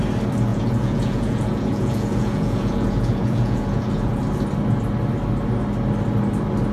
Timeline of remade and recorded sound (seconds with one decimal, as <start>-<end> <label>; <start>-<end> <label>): 0.0-0.5 recorded; 0.5-4.2 remade; 4.2-6.7 recorded